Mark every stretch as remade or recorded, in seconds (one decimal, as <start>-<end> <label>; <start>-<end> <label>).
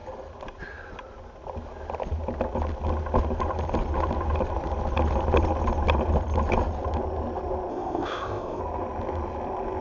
0.0-7.7 recorded; 7.7-8.6 remade; 8.6-9.8 recorded